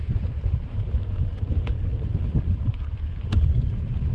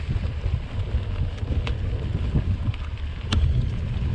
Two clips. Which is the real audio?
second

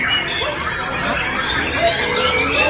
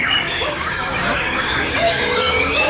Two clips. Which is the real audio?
first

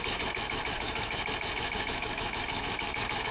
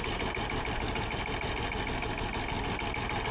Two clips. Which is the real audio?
second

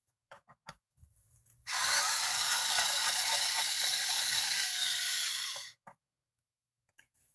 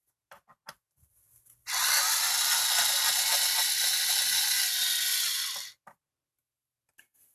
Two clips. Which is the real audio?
second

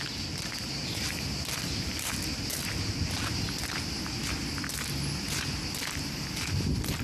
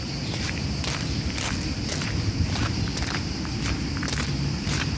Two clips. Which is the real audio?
first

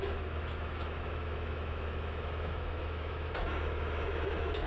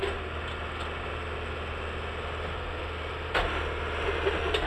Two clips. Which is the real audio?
second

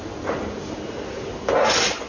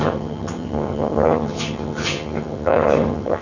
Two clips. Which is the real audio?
first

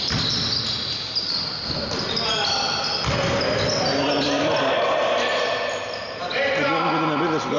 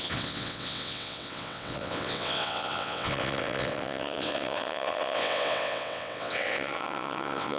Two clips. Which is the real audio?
first